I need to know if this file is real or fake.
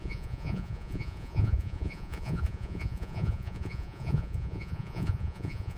fake